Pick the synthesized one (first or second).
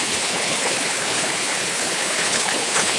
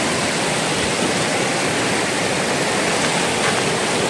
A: first